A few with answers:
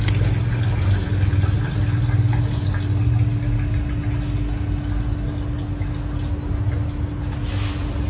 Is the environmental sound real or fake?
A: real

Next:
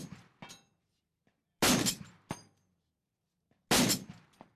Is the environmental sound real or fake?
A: real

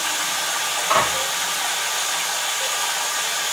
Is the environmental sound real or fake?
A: real